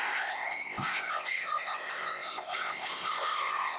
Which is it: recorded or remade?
remade